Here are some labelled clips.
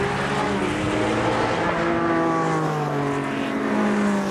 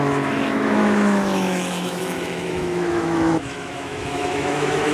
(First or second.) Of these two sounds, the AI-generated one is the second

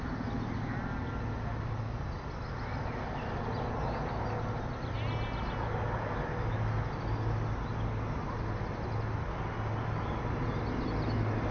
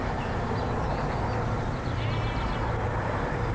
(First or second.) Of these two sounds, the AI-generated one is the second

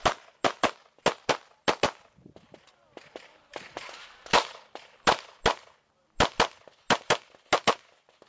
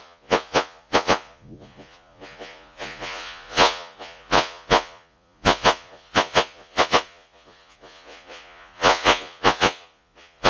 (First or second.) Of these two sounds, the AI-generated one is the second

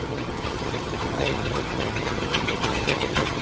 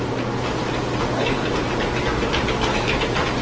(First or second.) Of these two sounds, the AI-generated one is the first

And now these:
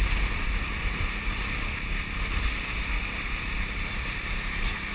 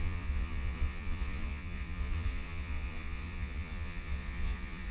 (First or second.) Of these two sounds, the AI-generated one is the second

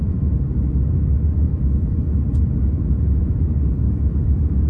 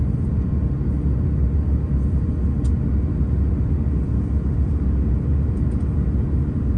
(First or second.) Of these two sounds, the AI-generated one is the first